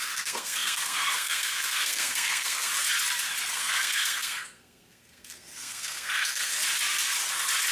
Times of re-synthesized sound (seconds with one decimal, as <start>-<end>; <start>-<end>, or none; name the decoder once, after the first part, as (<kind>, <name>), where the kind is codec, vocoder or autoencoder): 0.0-2.7 (codec, SNAC); 3.5-6.6